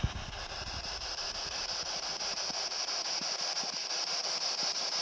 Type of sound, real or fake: real